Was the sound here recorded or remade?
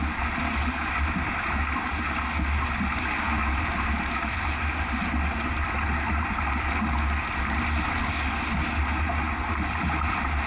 recorded